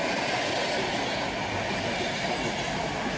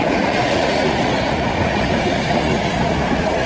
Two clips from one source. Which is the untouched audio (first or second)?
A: first